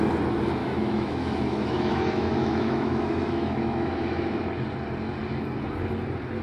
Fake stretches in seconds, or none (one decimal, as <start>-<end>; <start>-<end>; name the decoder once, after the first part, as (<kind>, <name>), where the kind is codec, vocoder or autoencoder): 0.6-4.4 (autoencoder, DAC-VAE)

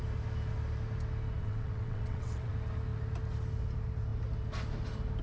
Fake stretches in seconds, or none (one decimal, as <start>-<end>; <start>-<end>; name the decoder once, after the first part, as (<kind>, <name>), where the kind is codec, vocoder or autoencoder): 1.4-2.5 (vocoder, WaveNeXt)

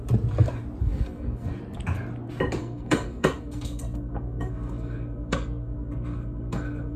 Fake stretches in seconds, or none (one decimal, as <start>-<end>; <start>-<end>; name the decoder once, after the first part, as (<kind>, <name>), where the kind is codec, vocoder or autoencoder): 0.8-1.5 (codec, SNAC); 2.6-7.0

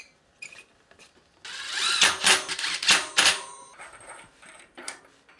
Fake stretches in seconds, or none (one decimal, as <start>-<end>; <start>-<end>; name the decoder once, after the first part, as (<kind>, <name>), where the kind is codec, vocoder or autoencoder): 3.0-5.0 (vocoder, BigVGAN v2)

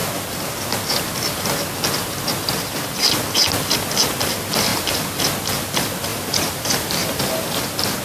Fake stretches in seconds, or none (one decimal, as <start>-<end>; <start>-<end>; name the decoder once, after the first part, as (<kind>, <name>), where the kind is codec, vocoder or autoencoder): 6.1-7.2 (vocoder, BigVGAN v2)